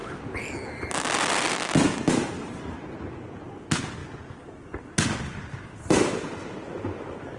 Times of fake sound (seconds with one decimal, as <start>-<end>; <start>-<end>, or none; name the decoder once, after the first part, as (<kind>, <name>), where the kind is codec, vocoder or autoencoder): none